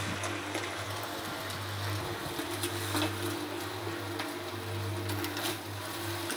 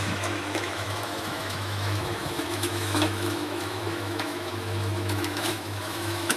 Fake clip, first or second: second